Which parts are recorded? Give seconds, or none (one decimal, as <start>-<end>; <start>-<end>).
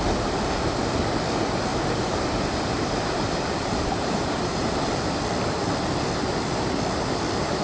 0.0-1.7; 5.1-7.6